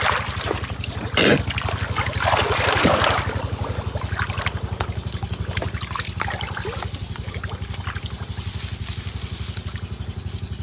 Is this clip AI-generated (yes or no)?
no